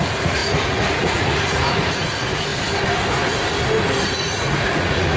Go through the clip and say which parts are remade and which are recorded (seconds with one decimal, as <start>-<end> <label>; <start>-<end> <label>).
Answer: 0.0-2.5 remade; 2.5-4.1 recorded; 4.1-5.2 remade